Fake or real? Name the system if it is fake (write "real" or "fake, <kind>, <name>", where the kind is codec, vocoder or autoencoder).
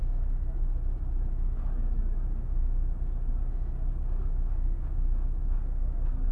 real